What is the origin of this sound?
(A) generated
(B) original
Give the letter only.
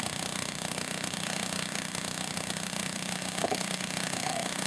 A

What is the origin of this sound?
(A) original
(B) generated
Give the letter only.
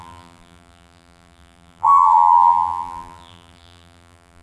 B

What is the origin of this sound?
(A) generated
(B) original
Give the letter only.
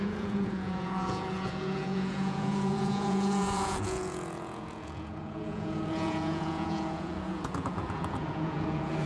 A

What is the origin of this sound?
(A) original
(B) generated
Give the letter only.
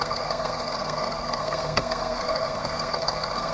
B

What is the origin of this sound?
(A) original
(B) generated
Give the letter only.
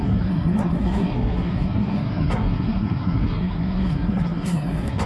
B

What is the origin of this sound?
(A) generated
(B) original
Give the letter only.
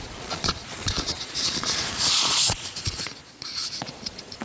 A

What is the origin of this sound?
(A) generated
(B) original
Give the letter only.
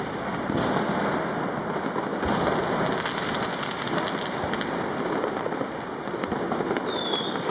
B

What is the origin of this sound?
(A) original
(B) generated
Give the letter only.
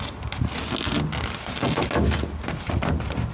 A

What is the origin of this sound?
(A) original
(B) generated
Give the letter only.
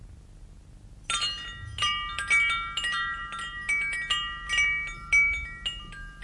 A